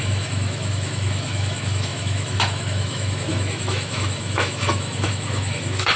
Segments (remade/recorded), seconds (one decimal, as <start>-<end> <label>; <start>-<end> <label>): 0.0-6.0 remade